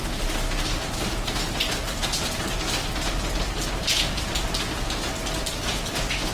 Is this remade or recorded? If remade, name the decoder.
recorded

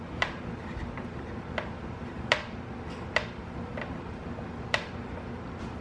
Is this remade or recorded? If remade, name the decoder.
recorded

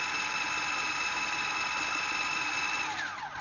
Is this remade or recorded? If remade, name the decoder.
recorded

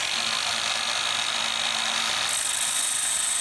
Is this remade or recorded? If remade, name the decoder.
recorded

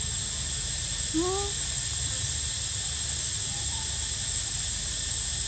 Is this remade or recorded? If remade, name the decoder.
recorded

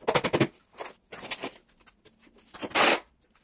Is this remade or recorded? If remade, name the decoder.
recorded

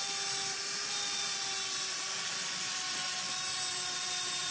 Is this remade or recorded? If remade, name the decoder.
recorded